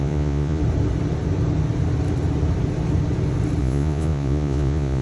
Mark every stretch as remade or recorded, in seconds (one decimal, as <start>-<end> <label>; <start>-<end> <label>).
0.0-0.6 remade; 0.6-3.6 recorded; 3.6-5.0 remade

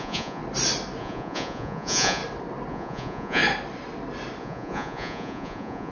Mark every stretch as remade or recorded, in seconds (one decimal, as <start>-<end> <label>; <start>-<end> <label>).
0.0-0.4 remade; 0.4-1.0 recorded; 1.0-2.2 remade; 2.2-2.7 recorded; 2.7-3.4 remade; 3.4-4.4 recorded; 4.4-5.9 remade

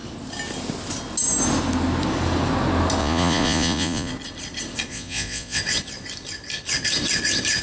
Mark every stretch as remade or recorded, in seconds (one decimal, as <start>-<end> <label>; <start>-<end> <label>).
0.0-3.0 recorded; 3.0-4.1 remade; 4.1-4.9 recorded; 4.9-5.6 remade; 5.6-7.6 recorded

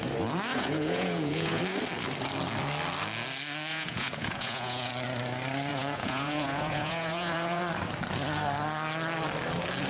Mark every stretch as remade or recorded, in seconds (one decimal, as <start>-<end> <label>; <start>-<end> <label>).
0.0-0.5 recorded; 0.5-1.6 remade; 1.6-3.7 recorded; 3.7-4.9 remade; 4.9-5.7 recorded; 5.7-7.6 remade; 7.6-9.9 recorded